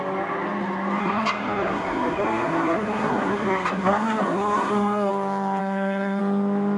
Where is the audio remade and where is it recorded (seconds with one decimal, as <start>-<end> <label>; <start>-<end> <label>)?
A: 0.0-1.0 recorded; 1.0-5.1 remade; 5.1-5.6 recorded; 5.6-6.2 remade; 6.2-6.8 recorded